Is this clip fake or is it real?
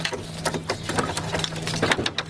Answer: real